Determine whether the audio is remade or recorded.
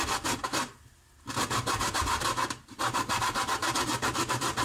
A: recorded